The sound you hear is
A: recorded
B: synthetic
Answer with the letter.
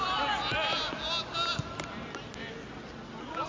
A